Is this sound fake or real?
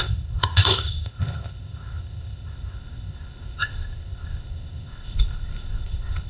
fake